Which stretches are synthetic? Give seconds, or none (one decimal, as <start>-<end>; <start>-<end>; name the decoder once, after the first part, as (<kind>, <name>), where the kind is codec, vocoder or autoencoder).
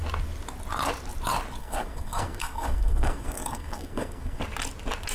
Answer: 1.6-4.4 (codec, SNAC)